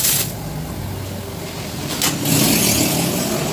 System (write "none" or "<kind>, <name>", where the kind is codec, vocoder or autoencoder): none